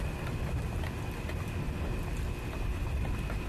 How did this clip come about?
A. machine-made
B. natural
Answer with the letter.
B